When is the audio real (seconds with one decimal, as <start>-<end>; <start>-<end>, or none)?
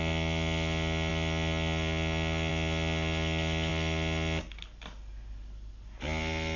0.0-6.6